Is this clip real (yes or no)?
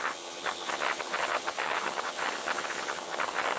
no